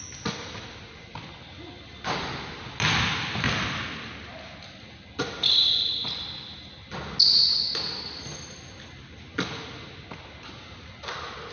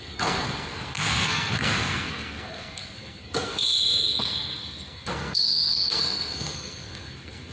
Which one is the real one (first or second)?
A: first